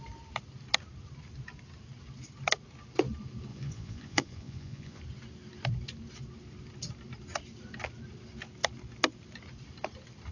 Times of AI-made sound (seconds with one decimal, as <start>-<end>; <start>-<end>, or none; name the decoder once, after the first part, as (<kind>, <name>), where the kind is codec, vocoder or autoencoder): 3.5-5.0 (vocoder, Vocos)